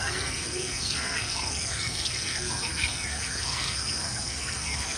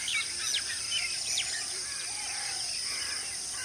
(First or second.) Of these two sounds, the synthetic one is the first